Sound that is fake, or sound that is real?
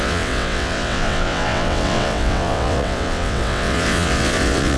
fake